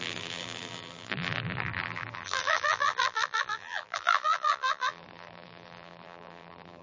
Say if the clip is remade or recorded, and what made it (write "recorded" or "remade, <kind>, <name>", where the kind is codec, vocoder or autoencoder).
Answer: remade, vocoder, BigVGAN v2